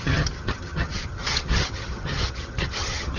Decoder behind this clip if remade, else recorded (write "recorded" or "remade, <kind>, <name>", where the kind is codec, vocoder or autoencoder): remade, vocoder, HiFi-GAN